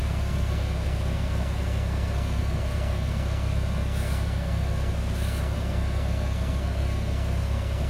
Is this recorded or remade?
remade